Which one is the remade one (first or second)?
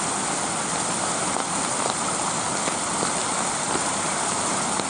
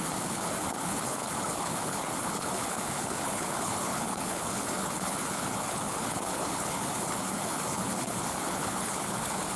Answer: second